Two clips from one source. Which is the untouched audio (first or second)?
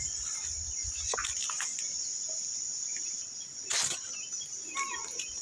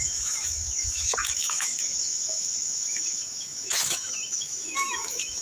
first